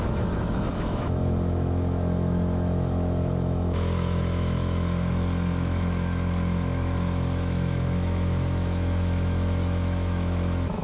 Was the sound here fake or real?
fake